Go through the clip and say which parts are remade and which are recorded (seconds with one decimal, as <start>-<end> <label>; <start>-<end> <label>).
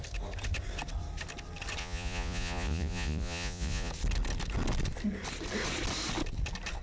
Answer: 0.0-1.8 recorded; 1.8-3.9 remade; 3.9-6.8 recorded